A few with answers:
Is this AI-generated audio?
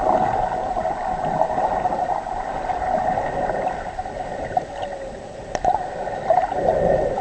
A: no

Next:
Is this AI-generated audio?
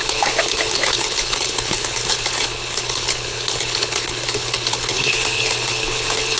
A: yes